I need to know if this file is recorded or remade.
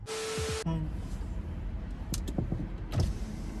recorded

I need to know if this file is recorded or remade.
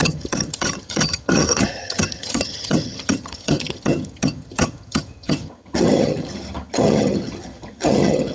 remade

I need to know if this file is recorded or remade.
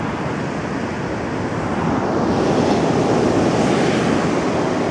recorded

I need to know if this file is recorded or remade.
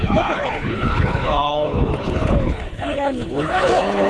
remade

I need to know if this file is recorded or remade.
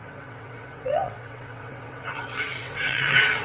remade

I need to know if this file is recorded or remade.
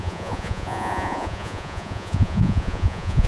remade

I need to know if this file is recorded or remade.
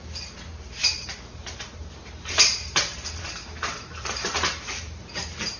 remade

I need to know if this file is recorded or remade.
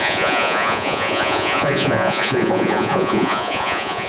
remade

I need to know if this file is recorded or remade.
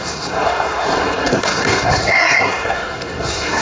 remade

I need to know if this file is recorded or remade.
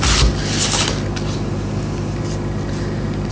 recorded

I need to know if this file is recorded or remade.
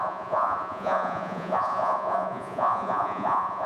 remade